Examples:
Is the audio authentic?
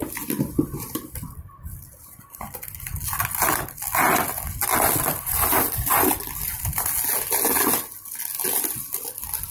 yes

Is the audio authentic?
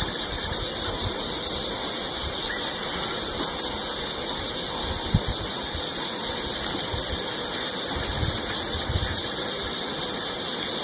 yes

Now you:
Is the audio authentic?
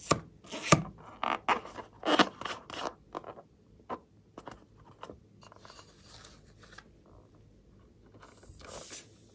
yes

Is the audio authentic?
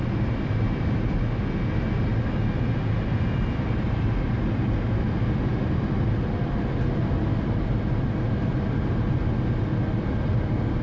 yes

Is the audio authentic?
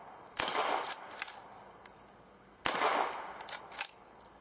yes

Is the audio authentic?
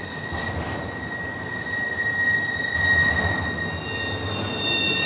yes